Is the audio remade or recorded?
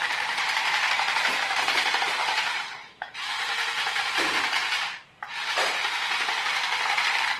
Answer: remade